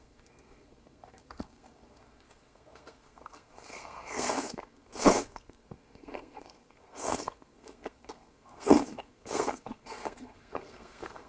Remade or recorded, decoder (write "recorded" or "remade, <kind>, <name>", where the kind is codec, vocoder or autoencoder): remade, codec, SNAC